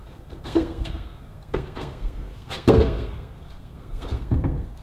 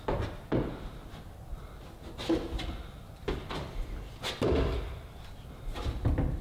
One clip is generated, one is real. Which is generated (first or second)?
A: first